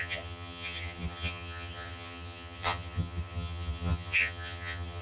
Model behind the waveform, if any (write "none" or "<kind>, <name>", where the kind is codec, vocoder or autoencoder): vocoder, HiFi-GAN